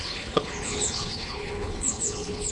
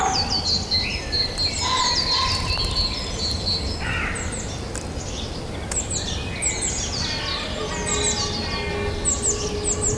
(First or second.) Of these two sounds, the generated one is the first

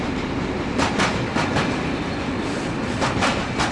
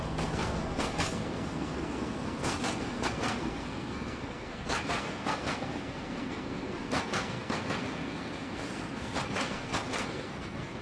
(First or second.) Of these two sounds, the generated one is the second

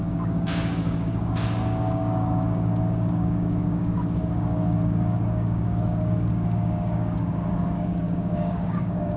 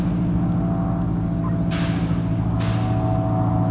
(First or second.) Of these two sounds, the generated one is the first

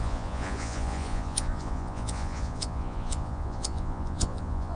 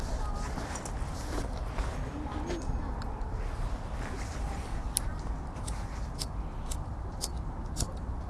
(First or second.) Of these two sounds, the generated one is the first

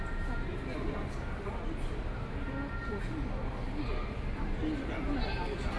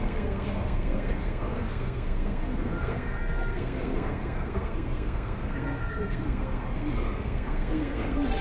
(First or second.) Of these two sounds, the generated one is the second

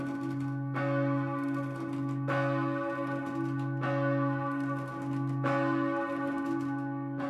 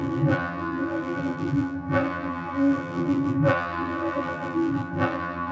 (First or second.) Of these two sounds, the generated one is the second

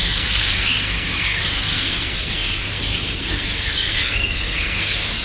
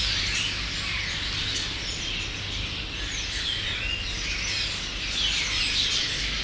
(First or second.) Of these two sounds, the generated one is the first